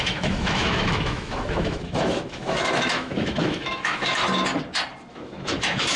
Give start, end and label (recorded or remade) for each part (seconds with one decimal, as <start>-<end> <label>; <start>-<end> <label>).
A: 0.0-4.2 remade; 4.2-5.1 recorded; 5.1-6.0 remade

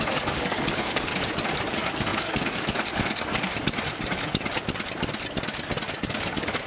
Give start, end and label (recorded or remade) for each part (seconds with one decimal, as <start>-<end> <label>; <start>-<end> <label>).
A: 0.0-1.1 remade; 1.1-1.7 recorded; 1.7-3.5 remade; 3.5-6.0 recorded; 6.0-6.7 remade

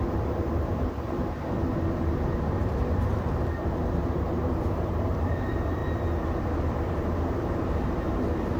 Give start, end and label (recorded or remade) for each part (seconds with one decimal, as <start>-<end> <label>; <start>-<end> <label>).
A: 0.0-1.2 remade; 1.2-1.9 recorded; 1.9-5.8 remade; 5.8-6.4 recorded; 6.4-8.6 remade

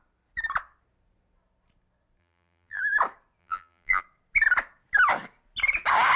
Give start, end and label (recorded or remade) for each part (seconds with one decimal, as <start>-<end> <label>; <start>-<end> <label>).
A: 0.0-2.2 recorded; 2.2-2.8 remade; 2.8-3.4 recorded; 3.4-4.0 remade; 4.0-6.2 recorded

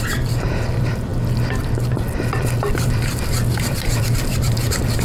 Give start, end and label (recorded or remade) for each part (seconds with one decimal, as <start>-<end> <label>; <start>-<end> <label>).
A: 0.0-1.1 remade; 1.1-1.9 recorded; 1.9-5.0 remade

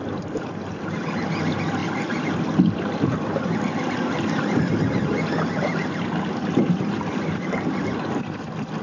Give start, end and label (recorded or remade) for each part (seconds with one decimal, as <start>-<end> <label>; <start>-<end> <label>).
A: 0.0-1.8 recorded; 1.8-4.6 remade; 4.6-5.7 recorded; 5.7-8.0 remade; 8.0-8.8 recorded

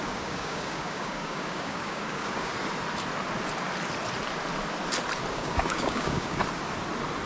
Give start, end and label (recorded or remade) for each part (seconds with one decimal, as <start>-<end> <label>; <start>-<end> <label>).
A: 0.0-2.5 remade; 2.5-5.3 recorded; 5.3-6.4 remade; 6.4-7.3 recorded